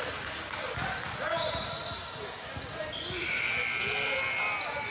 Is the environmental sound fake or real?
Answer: real